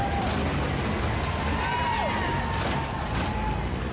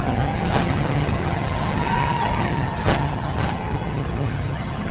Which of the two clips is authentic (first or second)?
first